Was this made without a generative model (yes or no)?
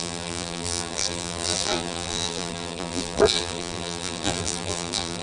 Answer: no